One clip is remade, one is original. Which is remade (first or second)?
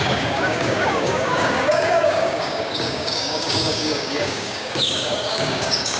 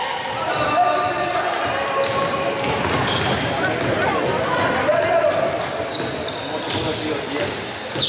first